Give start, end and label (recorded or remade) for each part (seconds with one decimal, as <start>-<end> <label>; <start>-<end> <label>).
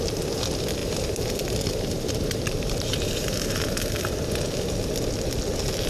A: 0.0-0.8 recorded; 0.8-4.3 remade; 4.3-5.9 recorded